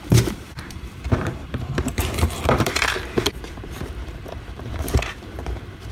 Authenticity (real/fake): fake